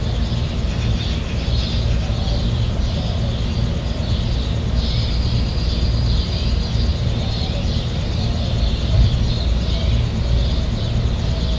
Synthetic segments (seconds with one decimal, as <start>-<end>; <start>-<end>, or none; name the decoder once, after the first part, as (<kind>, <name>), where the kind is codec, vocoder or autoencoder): 6.9-9.1 (vocoder, BigVGAN v2)